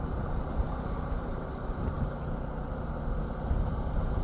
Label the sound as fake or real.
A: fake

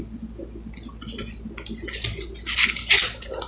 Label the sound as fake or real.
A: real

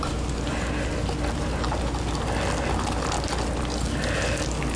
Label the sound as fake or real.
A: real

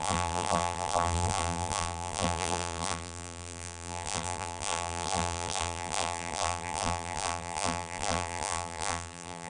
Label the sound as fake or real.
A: fake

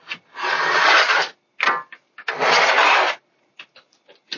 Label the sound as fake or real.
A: real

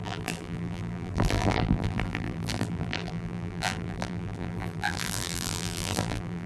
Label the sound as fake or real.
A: fake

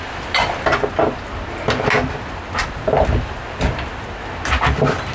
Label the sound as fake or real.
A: real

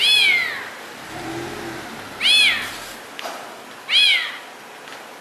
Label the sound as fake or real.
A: real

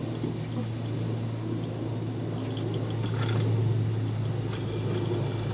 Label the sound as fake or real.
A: real